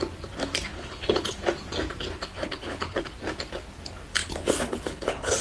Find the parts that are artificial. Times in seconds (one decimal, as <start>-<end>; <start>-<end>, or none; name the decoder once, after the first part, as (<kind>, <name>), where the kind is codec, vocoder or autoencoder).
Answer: 0.7-1.4 (codec, HILCodec); 2.3-3.0; 4.2-5.4